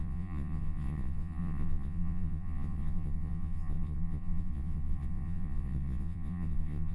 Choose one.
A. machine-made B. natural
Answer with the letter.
A